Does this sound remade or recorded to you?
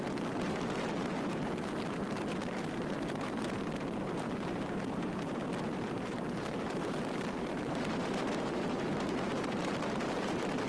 remade